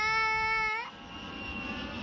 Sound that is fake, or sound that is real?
real